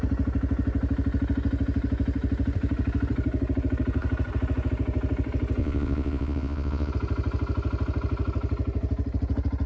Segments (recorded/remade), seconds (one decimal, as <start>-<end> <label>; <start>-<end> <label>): 0.0-5.6 recorded; 5.6-6.9 remade; 6.9-9.7 recorded